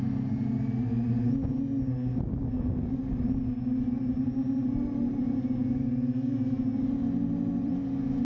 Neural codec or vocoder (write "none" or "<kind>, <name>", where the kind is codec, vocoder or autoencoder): none